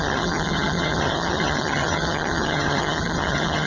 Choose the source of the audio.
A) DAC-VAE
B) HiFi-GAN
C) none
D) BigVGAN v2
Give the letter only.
B